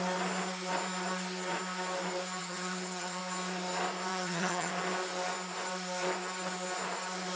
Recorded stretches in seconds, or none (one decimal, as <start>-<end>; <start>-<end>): 0.0-2.4; 3.2-4.1; 4.7-7.4